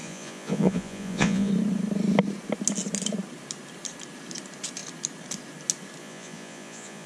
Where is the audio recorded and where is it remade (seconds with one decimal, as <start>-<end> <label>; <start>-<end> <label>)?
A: 0.0-1.5 remade; 1.5-6.0 recorded; 6.0-7.1 remade